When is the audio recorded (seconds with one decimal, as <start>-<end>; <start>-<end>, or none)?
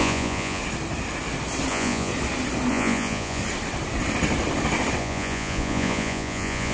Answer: 0.6-1.7; 2.1-2.7; 3.4-5.0